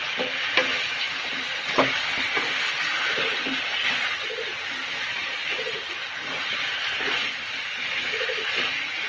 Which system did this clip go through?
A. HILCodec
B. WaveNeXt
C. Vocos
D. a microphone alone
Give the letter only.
D